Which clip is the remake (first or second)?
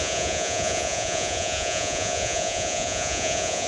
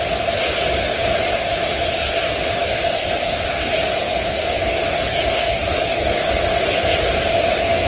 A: first